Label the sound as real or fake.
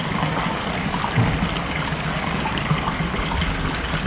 real